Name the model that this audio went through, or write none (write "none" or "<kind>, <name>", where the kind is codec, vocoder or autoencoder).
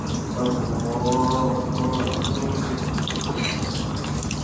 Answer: none